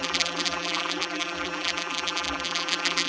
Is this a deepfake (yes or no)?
yes